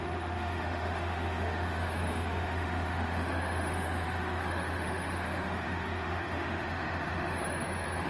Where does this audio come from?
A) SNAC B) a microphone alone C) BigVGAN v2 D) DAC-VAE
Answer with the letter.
D